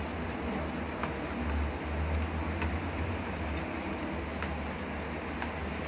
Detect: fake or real real